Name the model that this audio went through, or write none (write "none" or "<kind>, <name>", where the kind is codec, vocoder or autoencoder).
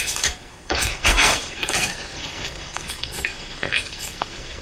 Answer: codec, SNAC